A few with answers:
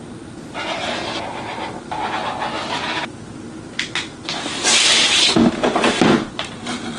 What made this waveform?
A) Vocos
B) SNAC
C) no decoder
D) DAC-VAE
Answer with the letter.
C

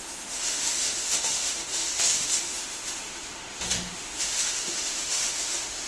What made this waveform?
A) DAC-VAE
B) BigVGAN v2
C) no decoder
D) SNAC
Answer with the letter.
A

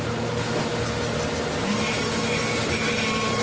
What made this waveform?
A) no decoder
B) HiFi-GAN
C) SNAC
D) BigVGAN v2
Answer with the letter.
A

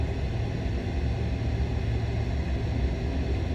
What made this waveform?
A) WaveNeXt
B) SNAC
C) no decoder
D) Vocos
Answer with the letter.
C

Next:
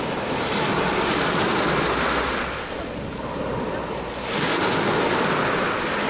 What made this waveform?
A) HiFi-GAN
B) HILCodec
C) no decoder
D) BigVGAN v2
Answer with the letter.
C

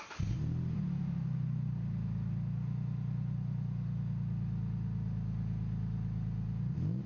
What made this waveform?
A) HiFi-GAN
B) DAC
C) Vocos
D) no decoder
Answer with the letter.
D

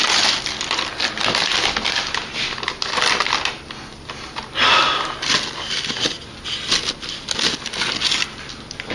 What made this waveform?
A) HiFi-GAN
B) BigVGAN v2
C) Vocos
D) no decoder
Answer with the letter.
D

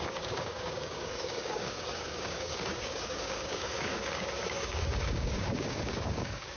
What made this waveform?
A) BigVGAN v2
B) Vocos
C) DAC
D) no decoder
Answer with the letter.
C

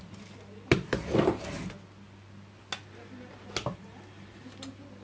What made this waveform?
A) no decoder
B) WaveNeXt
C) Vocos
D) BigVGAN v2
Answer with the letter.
A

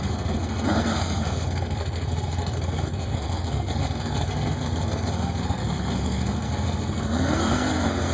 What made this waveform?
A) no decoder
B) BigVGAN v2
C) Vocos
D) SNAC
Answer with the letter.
D